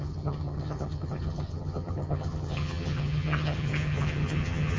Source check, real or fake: fake